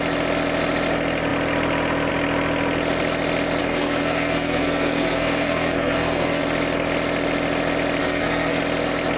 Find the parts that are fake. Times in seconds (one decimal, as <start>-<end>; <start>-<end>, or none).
3.6-6.4; 8.0-8.6